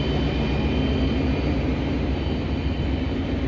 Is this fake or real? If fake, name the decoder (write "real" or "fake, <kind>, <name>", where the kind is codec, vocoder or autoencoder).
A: real